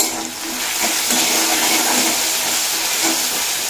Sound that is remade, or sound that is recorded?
recorded